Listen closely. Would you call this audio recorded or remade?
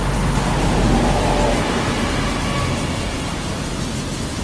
recorded